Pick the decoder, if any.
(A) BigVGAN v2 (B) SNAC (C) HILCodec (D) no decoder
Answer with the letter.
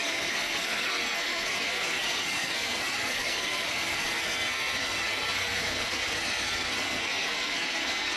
B